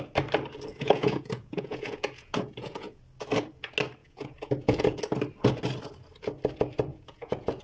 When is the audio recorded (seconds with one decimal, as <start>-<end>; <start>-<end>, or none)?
0.0-0.7; 3.0-4.0; 5.0-6.9